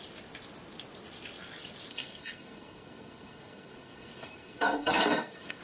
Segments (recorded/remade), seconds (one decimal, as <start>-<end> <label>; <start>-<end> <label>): 0.0-1.9 recorded; 1.9-5.6 remade